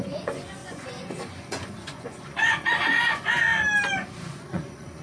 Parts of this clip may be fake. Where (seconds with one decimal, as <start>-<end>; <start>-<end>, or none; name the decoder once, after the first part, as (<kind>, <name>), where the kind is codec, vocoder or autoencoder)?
0.0-3.5 (vocoder, Vocos); 4.2-5.0